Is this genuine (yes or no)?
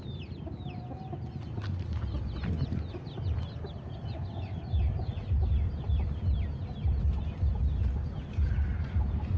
yes